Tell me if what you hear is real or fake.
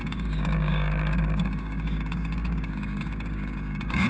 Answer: fake